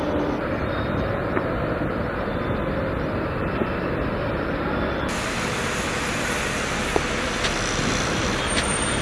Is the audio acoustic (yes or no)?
yes